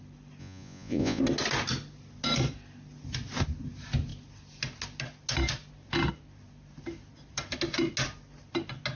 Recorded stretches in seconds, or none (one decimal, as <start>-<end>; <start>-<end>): 0.0-0.4; 1.2-8.9